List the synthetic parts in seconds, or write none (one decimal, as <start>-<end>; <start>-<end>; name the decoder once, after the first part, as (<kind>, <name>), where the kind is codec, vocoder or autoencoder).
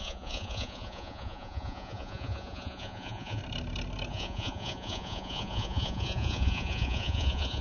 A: 0.0-3.4 (vocoder, Vocos); 4.1-7.6